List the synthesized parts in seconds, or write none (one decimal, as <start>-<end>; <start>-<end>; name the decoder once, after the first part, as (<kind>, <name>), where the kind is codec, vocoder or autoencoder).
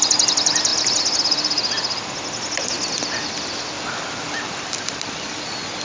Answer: none